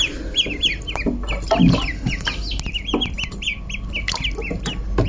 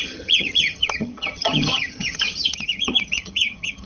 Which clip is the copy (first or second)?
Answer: second